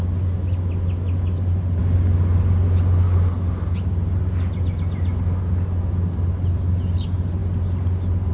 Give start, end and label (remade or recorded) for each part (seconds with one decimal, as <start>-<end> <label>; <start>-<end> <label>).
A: 0.0-8.3 recorded